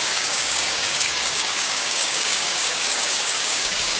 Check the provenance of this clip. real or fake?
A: fake